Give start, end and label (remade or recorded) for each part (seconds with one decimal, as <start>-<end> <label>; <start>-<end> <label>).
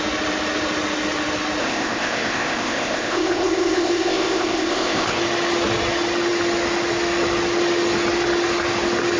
0.0-1.6 recorded; 1.6-5.2 remade; 5.2-9.2 recorded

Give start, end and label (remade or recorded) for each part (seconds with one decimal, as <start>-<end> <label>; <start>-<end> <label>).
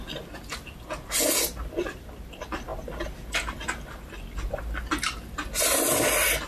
0.0-6.5 recorded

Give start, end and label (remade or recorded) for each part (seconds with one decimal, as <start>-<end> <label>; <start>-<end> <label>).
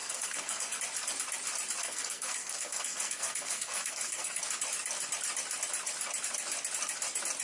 0.0-0.8 remade; 0.8-1.8 recorded; 1.8-4.4 remade; 4.4-7.4 recorded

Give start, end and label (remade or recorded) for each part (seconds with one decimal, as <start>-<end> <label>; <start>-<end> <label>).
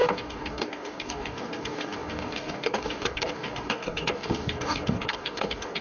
0.0-5.8 remade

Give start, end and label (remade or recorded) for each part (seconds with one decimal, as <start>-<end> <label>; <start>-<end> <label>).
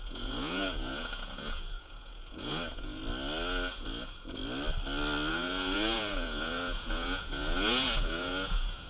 0.0-3.0 remade; 3.0-3.7 recorded; 3.7-4.4 remade; 4.4-5.3 recorded; 5.3-8.9 remade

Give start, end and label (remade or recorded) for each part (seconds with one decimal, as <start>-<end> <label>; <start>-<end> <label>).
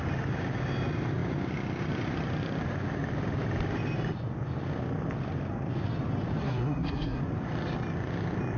0.0-6.4 recorded; 6.4-7.2 remade; 7.2-8.6 recorded